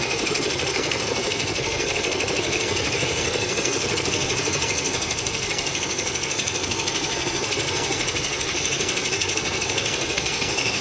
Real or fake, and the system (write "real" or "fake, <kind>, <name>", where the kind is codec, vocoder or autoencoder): fake, codec, SNAC